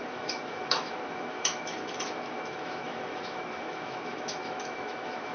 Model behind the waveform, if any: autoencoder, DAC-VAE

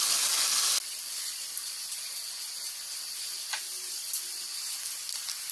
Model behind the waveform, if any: none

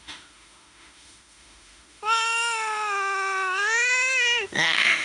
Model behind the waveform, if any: autoencoder, DAC-VAE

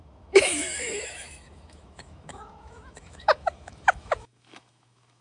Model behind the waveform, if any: autoencoder, DAC-VAE